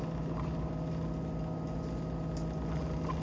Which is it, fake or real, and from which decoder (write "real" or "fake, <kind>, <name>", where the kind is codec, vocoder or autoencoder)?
real